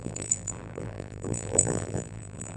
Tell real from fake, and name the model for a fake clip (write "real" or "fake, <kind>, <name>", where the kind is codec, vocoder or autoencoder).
fake, vocoder, BigVGAN v2